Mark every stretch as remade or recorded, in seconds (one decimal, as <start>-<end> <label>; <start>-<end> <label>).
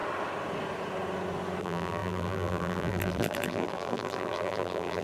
0.0-1.6 recorded; 1.6-5.0 remade